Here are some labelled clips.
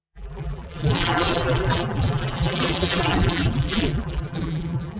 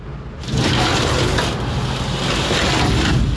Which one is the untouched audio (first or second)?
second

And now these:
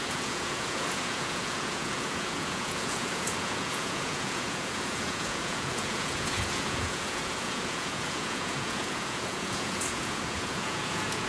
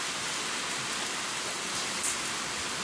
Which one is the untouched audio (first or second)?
second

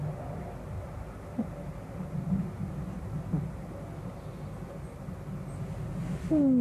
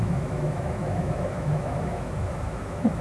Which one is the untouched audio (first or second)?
first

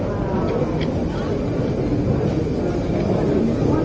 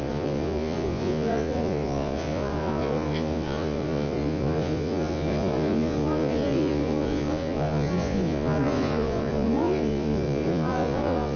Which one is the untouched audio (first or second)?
first